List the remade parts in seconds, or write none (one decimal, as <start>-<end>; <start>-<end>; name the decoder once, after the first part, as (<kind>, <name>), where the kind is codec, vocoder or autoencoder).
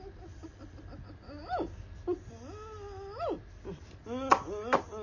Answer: none